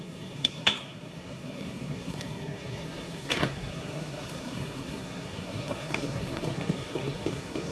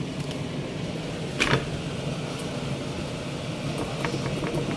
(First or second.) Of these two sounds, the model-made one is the first